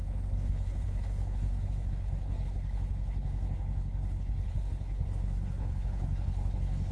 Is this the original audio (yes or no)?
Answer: no